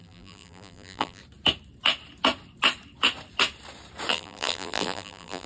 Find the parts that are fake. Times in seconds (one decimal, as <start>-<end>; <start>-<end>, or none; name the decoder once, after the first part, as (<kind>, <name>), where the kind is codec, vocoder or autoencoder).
0.0-1.2 (vocoder, BigVGAN v2); 4.1-5.5